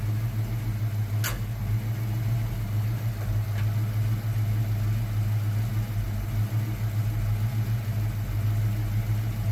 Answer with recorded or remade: recorded